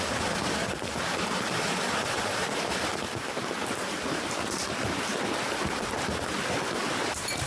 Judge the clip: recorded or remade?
recorded